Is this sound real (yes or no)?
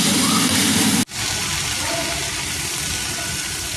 yes